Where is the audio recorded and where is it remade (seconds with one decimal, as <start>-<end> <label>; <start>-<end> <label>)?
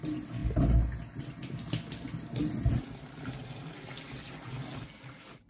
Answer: 0.0-5.5 recorded